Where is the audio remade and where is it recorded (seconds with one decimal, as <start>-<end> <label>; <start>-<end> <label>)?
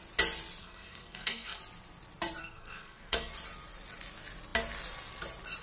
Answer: 0.0-0.6 recorded; 0.6-1.6 remade; 1.6-2.4 recorded; 2.4-3.3 remade; 3.3-5.6 recorded